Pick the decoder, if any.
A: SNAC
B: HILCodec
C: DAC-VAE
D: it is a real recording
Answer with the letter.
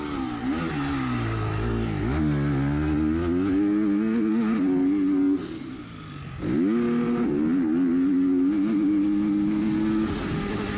D